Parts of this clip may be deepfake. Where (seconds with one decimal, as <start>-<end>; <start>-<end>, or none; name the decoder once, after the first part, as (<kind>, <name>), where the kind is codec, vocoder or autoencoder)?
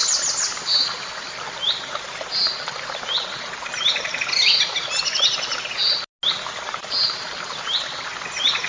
none